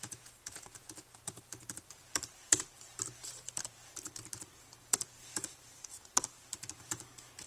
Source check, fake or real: fake